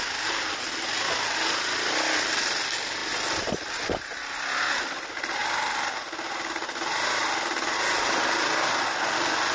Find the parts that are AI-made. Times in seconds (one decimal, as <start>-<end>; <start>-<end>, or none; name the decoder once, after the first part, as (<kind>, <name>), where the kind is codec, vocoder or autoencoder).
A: none